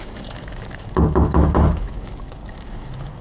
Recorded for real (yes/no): no